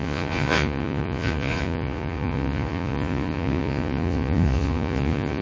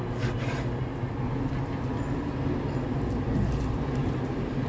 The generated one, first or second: first